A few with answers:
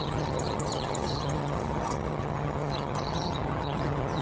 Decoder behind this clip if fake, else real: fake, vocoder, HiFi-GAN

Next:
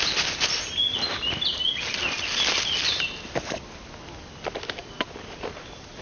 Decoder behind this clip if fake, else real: real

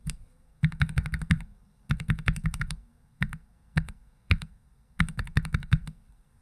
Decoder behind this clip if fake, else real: fake, codec, SNAC